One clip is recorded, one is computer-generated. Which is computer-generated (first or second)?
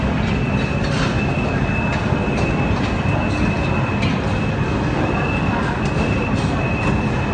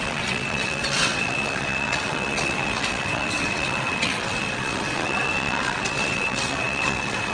second